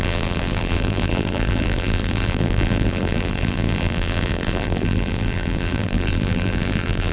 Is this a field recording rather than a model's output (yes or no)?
no